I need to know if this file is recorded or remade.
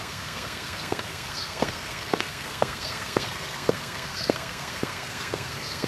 remade